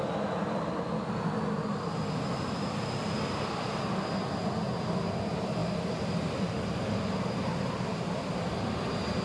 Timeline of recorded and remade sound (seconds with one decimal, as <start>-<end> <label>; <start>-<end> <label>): 0.0-9.2 recorded